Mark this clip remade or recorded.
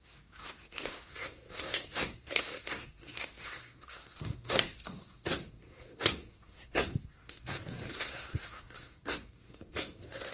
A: remade